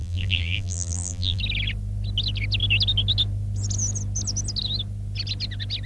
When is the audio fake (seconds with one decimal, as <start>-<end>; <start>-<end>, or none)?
0.0-1.4